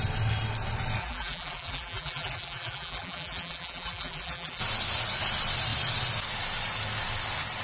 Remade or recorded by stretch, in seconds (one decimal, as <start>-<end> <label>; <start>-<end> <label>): 0.0-1.0 recorded; 1.0-4.6 remade; 4.6-7.6 recorded